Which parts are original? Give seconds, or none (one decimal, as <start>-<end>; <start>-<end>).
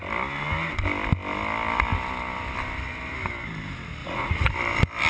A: 0.0-4.0; 4.5-5.1